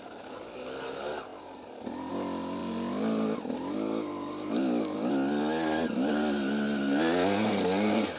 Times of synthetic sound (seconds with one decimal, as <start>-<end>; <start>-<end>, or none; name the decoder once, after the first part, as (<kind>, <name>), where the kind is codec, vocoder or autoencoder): none